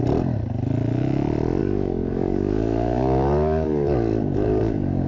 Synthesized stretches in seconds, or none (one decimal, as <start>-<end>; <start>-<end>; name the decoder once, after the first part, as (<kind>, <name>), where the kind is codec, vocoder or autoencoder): 1.6-5.1 (codec, DAC)